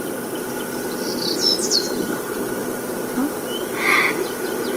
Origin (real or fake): real